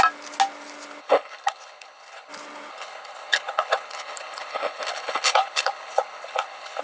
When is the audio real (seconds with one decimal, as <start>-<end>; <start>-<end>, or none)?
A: 0.0-1.0; 2.3-2.7